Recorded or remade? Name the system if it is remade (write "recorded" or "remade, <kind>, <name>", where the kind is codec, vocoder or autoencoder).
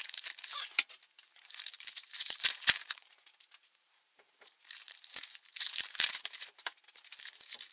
remade, vocoder, BigVGAN v2